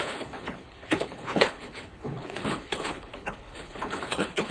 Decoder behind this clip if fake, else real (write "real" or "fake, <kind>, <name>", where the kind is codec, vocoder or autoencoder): fake, codec, HILCodec